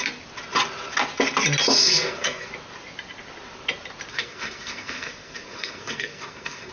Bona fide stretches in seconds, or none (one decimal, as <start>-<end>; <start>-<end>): 0.0-1.8; 2.5-4.1